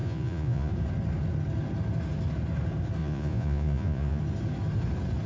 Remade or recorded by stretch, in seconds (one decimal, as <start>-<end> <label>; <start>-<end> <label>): 0.0-0.7 remade; 0.7-3.0 recorded; 3.0-4.2 remade; 4.2-5.3 recorded